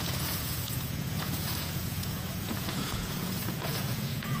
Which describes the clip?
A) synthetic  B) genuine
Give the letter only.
A